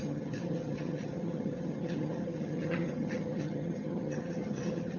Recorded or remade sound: remade